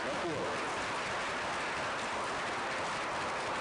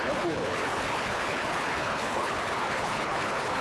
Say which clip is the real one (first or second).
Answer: first